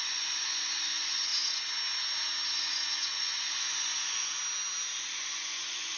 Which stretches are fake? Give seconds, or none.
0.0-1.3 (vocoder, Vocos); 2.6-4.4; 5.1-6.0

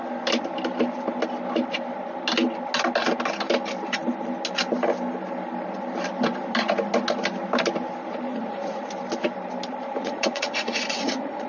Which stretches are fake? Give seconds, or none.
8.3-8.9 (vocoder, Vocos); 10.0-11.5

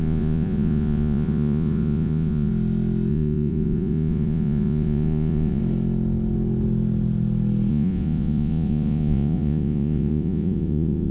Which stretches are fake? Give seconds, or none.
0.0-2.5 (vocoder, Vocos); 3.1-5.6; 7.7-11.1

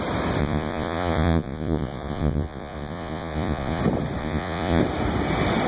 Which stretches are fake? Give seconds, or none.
0.4-3.8 (vocoder, Vocos); 4.2-4.8

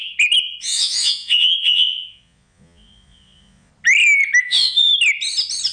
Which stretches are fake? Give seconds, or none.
0.6-3.7 (vocoder, Vocos); 4.4-4.9

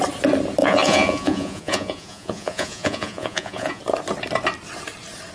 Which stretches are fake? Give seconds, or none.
0.6-3.8 (vocoder, Vocos)

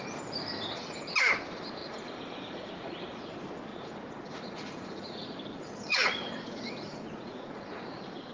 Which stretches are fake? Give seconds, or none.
1.8-3.3 (vocoder, Vocos); 3.7-8.3